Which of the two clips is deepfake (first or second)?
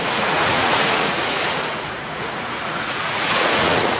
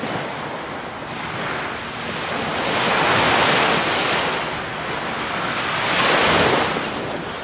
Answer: first